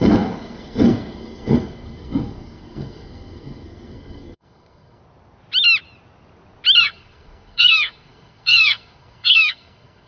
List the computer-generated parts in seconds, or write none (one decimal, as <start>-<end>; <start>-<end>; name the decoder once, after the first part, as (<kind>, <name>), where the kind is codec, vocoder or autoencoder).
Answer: 0.0-5.0 (codec, SNAC); 6.8-10.1